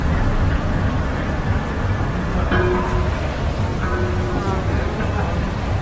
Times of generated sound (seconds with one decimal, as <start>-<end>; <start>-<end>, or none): none